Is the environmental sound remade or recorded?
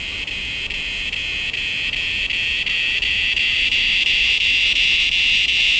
remade